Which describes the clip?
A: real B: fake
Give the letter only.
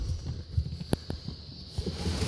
A